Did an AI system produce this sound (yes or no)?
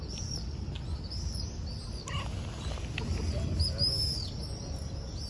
no